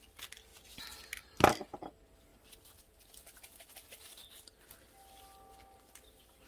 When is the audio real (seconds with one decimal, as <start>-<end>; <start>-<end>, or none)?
0.0-6.5